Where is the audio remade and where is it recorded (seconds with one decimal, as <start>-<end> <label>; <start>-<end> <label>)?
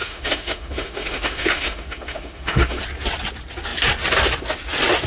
0.0-2.8 remade; 2.8-5.1 recorded